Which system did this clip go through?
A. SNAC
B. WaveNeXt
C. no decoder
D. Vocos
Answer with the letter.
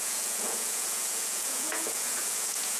D